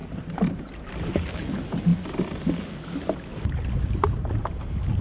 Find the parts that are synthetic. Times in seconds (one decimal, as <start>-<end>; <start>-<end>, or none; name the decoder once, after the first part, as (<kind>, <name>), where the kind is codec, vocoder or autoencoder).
0.0-0.6 (vocoder, BigVGAN v2)